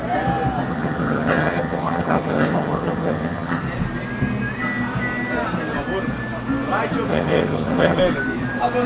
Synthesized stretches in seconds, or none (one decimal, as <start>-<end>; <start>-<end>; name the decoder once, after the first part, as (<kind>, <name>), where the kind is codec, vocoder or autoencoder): 0.7-3.6 (vocoder, HiFi-GAN); 7.1-8.0